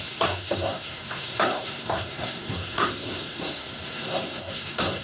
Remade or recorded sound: remade